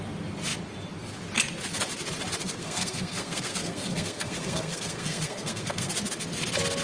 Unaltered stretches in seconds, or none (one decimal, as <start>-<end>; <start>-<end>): 0.0-2.4; 5.9-6.8